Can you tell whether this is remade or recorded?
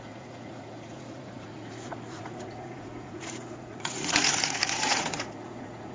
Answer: remade